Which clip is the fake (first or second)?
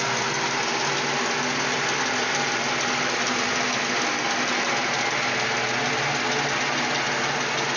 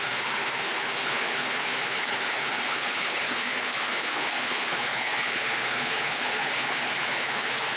second